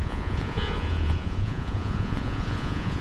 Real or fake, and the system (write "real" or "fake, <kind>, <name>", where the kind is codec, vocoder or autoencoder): fake, vocoder, Vocos